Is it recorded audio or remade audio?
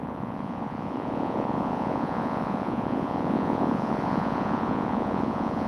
remade